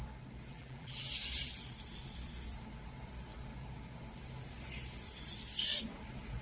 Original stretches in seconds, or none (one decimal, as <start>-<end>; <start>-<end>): 0.0-0.5; 1.1-6.4